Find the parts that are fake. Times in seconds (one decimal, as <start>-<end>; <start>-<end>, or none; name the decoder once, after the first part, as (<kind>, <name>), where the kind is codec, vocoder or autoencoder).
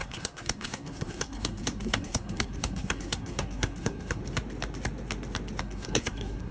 0.0-4.2 (codec, SNAC); 5.6-6.5